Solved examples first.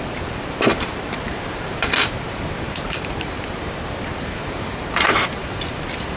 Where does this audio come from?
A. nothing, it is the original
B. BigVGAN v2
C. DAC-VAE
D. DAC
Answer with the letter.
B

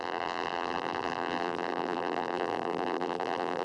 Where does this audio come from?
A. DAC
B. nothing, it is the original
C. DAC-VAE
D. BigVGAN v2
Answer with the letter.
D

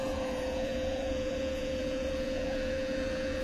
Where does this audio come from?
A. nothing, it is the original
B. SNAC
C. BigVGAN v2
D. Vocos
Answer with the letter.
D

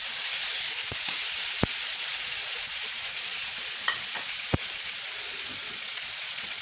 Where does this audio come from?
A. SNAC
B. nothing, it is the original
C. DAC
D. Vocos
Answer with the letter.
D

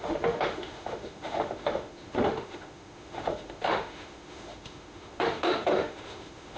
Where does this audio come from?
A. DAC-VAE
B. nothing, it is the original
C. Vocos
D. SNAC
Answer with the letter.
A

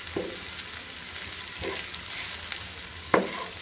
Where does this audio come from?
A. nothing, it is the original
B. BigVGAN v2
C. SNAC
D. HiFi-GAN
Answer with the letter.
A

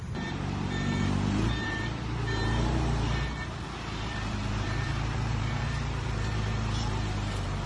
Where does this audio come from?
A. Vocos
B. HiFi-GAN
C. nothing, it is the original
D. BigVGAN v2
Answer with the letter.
D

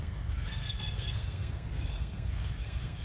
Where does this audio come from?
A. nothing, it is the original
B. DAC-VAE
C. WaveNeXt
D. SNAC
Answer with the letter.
D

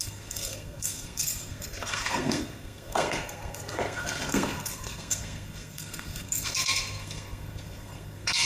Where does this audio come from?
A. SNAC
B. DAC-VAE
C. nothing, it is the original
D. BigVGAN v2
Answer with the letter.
A